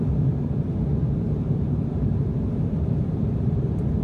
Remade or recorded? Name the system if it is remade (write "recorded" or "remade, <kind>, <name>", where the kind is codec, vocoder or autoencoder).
remade, vocoder, BigVGAN v2